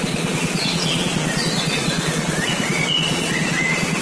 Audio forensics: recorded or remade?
remade